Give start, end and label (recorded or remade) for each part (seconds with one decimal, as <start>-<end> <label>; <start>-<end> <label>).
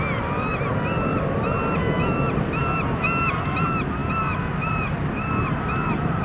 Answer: 0.0-6.2 recorded